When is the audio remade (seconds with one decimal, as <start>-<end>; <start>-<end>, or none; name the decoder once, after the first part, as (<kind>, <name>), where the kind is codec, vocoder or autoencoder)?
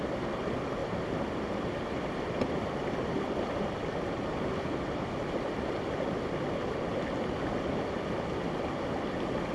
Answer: none